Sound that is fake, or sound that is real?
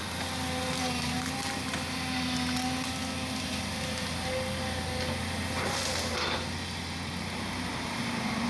real